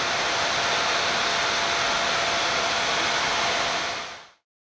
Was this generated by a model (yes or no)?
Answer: no